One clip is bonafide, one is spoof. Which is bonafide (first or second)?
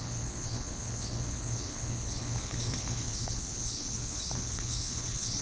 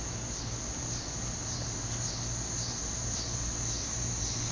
second